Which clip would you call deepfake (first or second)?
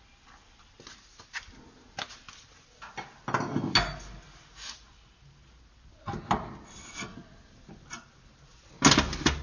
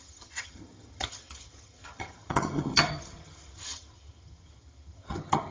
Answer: second